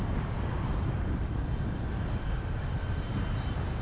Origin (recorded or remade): recorded